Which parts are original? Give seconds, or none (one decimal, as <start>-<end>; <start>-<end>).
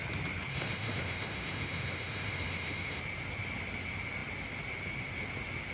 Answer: 0.0-0.5; 3.0-5.7